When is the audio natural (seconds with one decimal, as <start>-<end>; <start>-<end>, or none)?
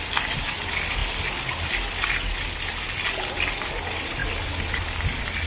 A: 0.0-5.5